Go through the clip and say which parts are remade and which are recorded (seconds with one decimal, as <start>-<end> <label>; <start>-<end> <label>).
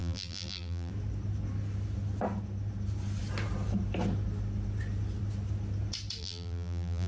0.0-0.9 remade; 0.9-6.2 recorded; 6.2-7.1 remade